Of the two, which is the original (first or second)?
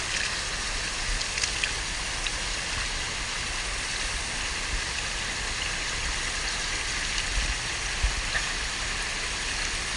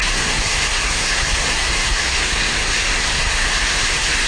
first